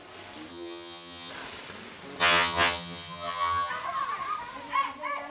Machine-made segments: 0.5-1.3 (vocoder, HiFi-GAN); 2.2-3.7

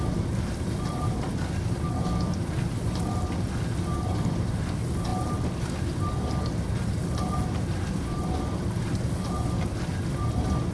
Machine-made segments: none